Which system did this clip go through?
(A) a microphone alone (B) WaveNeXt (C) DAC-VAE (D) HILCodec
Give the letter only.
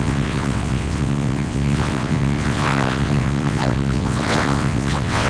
B